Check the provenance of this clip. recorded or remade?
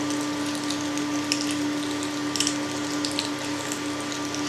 recorded